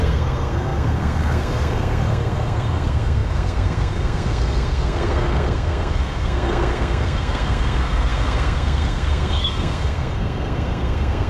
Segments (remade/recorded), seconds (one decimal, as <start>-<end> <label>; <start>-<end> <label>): 0.0-11.3 remade